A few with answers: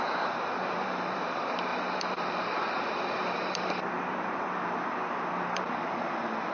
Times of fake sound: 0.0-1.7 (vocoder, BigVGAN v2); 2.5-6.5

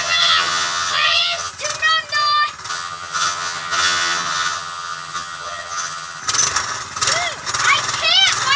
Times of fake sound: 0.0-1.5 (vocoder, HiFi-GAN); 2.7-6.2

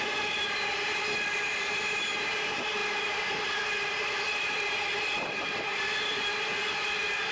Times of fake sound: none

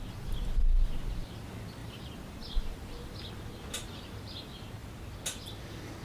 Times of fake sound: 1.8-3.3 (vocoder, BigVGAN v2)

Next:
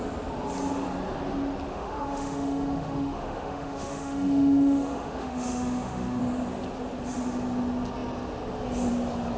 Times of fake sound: 1.7-6.2 (autoencoder, DAC-VAE)

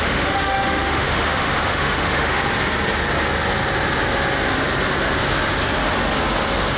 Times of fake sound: 0.0-2.4 (autoencoder, DAC-VAE)